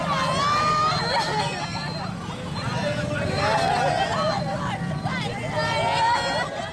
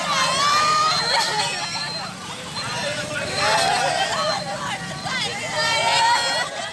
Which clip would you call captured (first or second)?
first